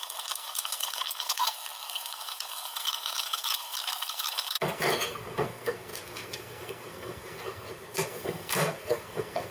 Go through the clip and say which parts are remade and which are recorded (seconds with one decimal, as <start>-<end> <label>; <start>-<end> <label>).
0.0-9.5 remade

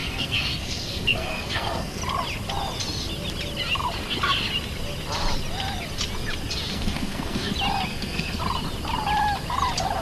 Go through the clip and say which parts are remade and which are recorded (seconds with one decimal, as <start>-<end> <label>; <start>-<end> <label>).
0.0-2.0 remade; 2.0-6.7 recorded; 6.7-7.5 remade; 7.5-7.9 recorded; 7.9-8.4 remade; 8.4-10.0 recorded

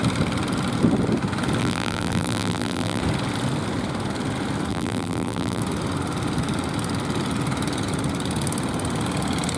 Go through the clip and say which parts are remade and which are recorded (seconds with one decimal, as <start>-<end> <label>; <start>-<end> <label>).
0.0-1.6 recorded; 1.6-3.0 remade; 3.0-4.7 recorded; 4.7-5.6 remade; 5.6-9.6 recorded

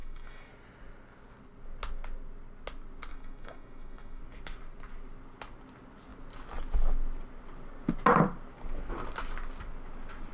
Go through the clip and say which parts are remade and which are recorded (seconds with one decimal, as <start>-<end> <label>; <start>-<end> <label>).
0.0-0.5 remade; 0.5-3.1 recorded; 3.1-4.2 remade; 4.2-10.3 recorded

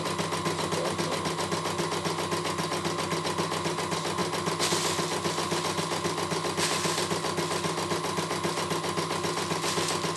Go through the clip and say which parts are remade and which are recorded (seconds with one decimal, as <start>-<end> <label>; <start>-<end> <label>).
0.0-10.2 recorded